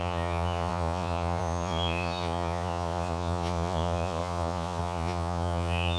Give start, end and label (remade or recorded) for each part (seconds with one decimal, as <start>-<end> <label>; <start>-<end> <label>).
0.0-6.0 remade

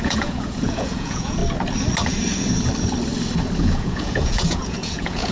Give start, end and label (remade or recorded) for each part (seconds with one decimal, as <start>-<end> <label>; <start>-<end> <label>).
0.0-1.4 remade; 1.4-3.6 recorded; 3.6-5.3 remade

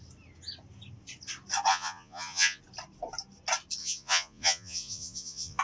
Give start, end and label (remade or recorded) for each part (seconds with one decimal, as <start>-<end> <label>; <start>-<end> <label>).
0.0-1.7 recorded; 1.7-2.6 remade; 2.6-3.8 recorded; 3.8-5.6 remade

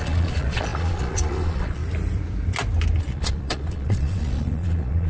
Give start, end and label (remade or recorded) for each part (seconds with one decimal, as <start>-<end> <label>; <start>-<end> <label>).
0.0-1.8 remade; 1.8-3.0 recorded; 3.0-5.1 remade

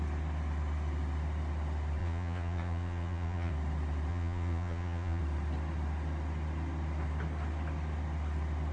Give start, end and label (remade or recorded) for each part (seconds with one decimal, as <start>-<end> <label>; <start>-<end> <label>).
0.0-2.0 recorded; 2.0-3.5 remade; 3.5-4.1 recorded; 4.1-5.2 remade; 5.2-8.7 recorded

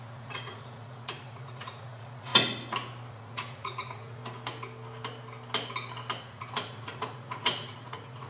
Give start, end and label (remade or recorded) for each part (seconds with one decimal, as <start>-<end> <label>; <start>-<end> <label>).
0.0-2.3 remade; 2.3-3.1 recorded; 3.1-4.2 remade; 4.2-6.2 recorded; 6.2-8.3 remade

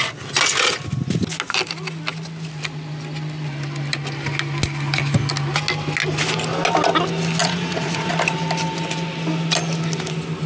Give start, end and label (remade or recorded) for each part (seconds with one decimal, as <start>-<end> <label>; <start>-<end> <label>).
0.0-7.4 recorded; 7.4-8.1 remade; 8.1-10.5 recorded

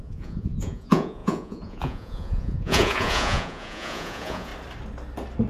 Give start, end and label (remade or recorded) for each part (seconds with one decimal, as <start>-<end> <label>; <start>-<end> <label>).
0.0-4.5 remade; 4.5-5.5 recorded